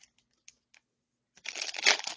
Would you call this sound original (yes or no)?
yes